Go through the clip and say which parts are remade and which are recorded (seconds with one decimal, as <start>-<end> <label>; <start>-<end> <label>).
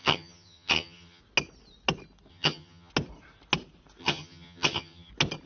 0.0-1.2 remade; 1.2-2.3 recorded; 2.3-2.9 remade; 2.9-4.0 recorded; 4.0-5.1 remade; 5.1-5.5 recorded